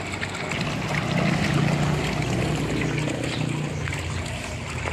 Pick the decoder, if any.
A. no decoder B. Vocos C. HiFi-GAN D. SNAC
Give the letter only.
A